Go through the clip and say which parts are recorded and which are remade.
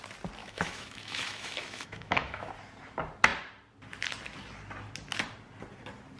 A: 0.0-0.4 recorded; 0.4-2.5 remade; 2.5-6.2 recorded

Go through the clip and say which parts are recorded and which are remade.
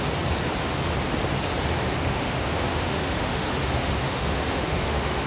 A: 0.0-1.8 recorded; 1.8-5.3 remade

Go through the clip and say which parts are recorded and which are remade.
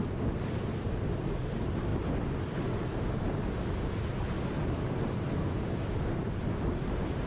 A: 0.0-7.3 recorded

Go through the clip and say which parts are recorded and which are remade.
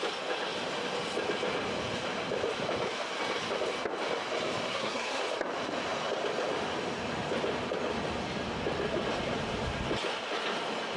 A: 0.0-4.7 recorded; 4.7-5.2 remade; 5.2-11.0 recorded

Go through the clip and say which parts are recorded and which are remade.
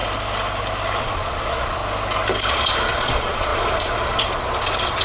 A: 0.0-1.0 recorded; 1.0-1.8 remade; 1.8-2.5 recorded; 2.5-5.0 remade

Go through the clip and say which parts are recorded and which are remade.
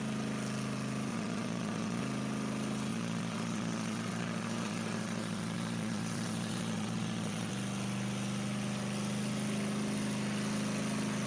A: 0.0-1.1 recorded; 1.1-2.0 remade; 2.0-2.9 recorded; 2.9-7.5 remade; 7.5-11.3 recorded